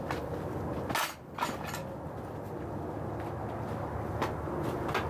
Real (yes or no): yes